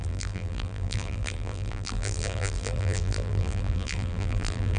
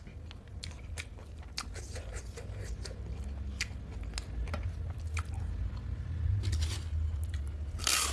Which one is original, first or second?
second